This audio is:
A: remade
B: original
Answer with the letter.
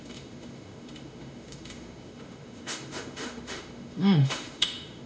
A